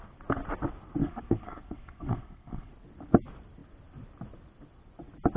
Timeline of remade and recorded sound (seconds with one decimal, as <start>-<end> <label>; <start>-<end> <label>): 0.0-1.0 recorded; 1.0-2.7 remade; 2.7-5.4 recorded